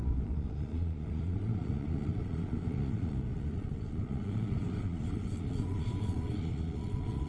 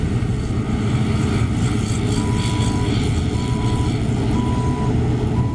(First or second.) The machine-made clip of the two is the first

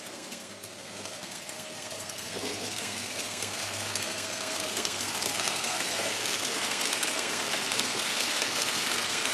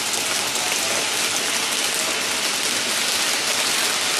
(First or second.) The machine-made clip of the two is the first